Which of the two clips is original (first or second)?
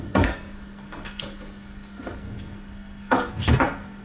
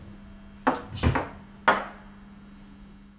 second